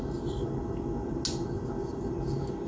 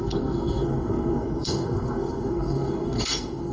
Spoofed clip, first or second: second